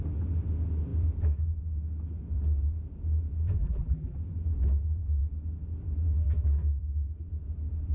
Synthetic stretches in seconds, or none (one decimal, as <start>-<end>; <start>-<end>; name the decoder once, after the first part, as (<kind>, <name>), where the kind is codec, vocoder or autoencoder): 3.6-4.2 (vocoder, BigVGAN v2)